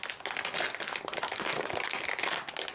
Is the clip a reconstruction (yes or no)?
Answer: no